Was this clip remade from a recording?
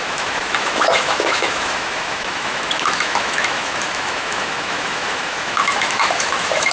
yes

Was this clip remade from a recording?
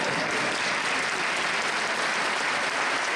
no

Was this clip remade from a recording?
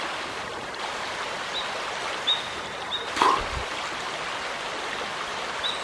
no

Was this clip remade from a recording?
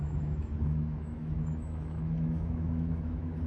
yes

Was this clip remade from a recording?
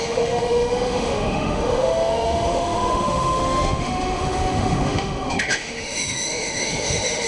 yes